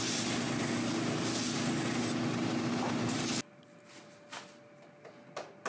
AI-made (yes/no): no